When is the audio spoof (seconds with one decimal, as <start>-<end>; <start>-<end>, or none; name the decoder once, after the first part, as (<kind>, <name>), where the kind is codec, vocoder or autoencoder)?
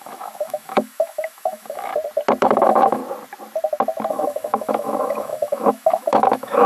0.0-1.9 (autoencoder, DAC-VAE); 2.4-3.0; 4.1-6.7